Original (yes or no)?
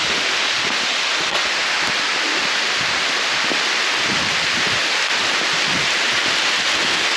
yes